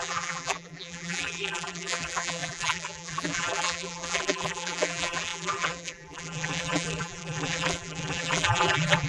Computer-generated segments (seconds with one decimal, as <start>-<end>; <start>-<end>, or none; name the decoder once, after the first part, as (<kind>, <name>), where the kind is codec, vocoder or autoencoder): 0.0-9.1 (vocoder, BigVGAN v2)